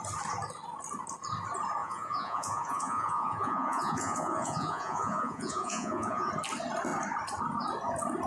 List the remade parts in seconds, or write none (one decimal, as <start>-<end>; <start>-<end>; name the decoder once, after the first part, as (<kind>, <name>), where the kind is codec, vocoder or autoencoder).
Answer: 1.8-6.3 (vocoder, Vocos)